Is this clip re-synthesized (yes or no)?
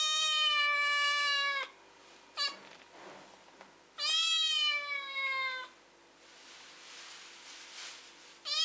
no